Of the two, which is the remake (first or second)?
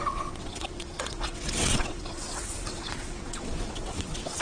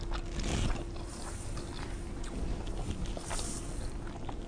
first